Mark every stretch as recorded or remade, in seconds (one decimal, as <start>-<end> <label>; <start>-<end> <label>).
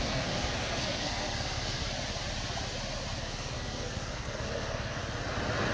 0.0-1.8 remade; 1.8-3.2 recorded; 3.2-5.0 remade; 5.0-5.7 recorded